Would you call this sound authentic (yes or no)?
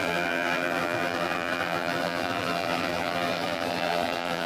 no